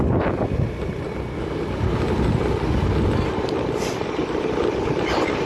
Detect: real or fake real